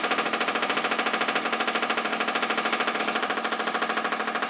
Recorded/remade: recorded